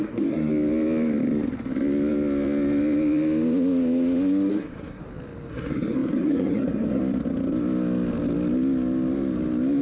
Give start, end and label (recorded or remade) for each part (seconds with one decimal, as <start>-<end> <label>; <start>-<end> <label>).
0.0-0.5 remade; 0.5-4.5 recorded; 4.5-5.0 remade; 5.0-5.5 recorded; 5.5-7.0 remade; 7.0-9.8 recorded